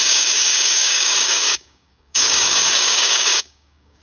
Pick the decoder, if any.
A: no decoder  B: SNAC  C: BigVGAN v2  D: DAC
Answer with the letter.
D